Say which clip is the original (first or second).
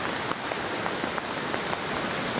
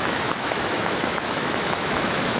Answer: first